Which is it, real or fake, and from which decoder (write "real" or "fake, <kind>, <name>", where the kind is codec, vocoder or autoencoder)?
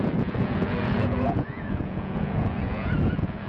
fake, vocoder, Vocos